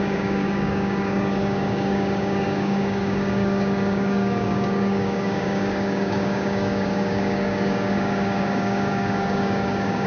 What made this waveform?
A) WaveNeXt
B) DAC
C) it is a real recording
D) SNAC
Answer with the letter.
B